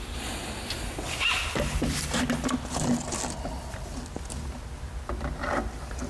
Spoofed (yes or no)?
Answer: no